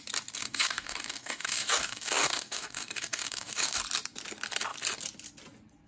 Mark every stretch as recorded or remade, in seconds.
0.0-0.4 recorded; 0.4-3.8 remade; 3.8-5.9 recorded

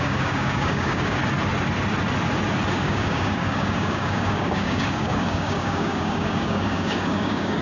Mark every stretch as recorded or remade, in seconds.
0.0-1.2 remade; 1.2-2.7 recorded; 2.7-7.6 remade

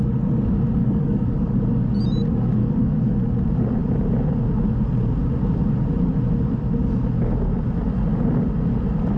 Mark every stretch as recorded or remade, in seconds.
0.0-0.8 recorded; 0.8-1.6 remade; 1.6-2.6 recorded; 2.6-3.2 remade; 3.2-9.2 recorded

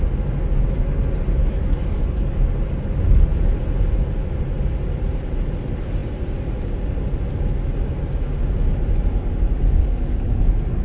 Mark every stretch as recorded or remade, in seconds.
0.0-1.4 recorded; 1.4-2.5 remade; 2.5-9.8 recorded; 9.8-10.4 remade; 10.4-10.8 recorded

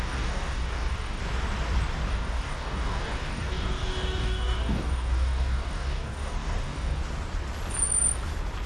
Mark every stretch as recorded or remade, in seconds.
0.0-1.2 remade; 1.2-2.1 recorded; 2.1-7.0 remade; 7.0-8.7 recorded

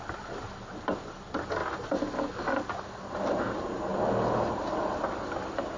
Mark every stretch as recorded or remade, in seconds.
0.0-5.8 recorded